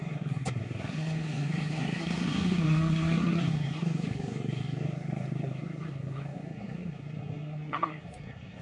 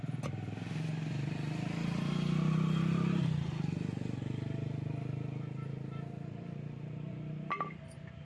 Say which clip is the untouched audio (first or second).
second